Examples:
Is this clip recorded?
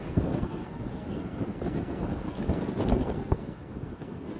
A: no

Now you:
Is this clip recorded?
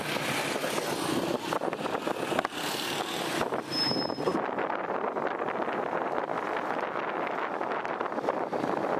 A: yes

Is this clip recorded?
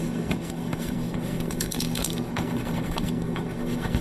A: no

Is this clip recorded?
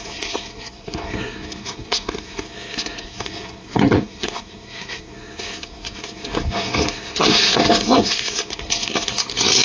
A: no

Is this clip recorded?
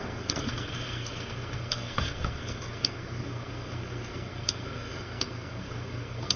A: no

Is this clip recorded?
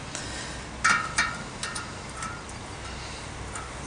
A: yes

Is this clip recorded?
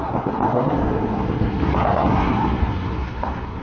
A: no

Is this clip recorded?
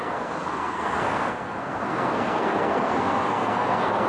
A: no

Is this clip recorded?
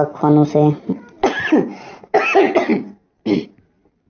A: yes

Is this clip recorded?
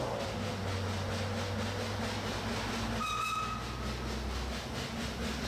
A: yes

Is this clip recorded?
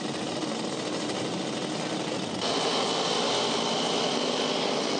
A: yes